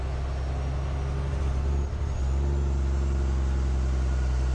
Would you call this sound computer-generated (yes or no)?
no